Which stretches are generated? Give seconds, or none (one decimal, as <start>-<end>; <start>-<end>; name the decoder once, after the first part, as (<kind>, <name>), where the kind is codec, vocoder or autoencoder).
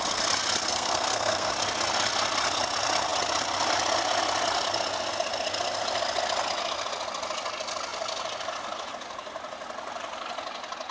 0.7-1.5 (codec, SNAC)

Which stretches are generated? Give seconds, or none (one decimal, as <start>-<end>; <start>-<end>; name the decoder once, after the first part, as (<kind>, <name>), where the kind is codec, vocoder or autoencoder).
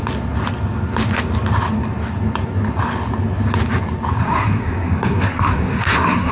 4.2-6.3 (codec, SNAC)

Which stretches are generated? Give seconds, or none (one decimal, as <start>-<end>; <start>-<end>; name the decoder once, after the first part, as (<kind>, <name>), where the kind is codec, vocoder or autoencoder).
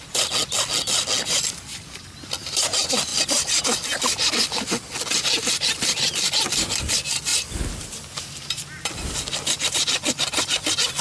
none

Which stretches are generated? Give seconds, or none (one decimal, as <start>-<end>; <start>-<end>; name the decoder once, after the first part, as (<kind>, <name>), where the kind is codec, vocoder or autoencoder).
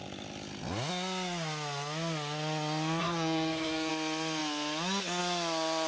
3.0-3.9 (codec, SNAC)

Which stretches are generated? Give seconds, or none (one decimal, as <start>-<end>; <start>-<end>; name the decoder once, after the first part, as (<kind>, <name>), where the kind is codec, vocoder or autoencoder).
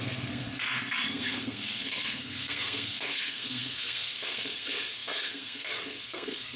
0.0-6.6 (codec, SNAC)